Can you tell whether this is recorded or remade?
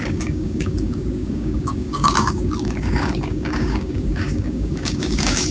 remade